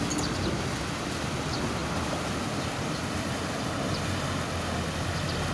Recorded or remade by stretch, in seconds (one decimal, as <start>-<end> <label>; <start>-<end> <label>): 0.0-5.5 recorded

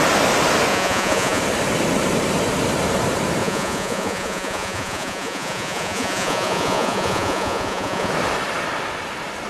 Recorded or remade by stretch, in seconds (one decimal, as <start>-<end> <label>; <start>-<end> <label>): 0.0-0.7 recorded; 0.7-1.4 remade; 1.4-3.4 recorded; 3.4-8.1 remade; 8.1-9.5 recorded